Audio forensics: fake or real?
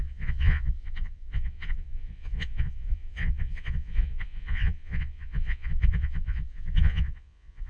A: fake